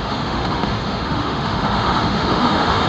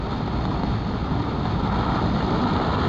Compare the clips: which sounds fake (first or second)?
first